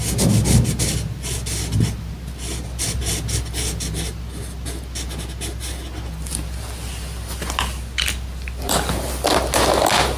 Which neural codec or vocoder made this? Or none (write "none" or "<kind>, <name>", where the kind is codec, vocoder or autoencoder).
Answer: none